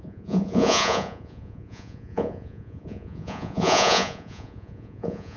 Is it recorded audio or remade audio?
remade